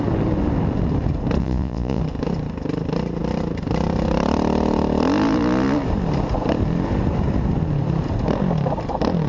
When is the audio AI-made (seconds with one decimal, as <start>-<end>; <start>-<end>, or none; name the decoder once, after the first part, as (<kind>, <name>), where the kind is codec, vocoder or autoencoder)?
1.4-2.0 (vocoder, Vocos)